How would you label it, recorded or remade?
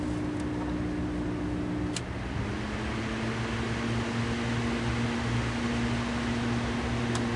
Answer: recorded